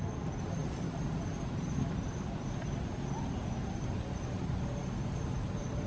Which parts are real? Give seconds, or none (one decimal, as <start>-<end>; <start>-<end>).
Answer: 0.0-5.9